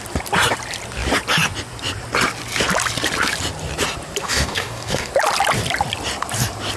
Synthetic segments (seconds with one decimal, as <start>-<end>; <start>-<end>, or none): 4.2-5.1